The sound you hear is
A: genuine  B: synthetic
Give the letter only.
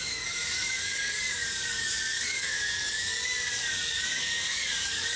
B